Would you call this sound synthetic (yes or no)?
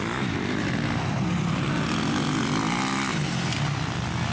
no